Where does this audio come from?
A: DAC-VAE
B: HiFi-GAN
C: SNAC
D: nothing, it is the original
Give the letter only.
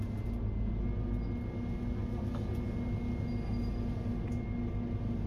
D